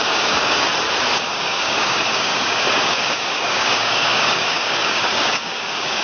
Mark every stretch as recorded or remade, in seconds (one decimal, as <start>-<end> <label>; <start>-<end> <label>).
0.0-0.7 remade; 0.7-1.3 recorded; 1.3-6.0 remade